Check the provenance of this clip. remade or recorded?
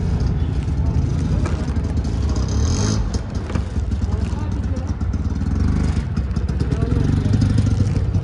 recorded